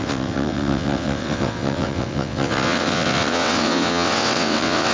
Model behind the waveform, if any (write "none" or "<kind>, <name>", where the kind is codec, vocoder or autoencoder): vocoder, WaveNeXt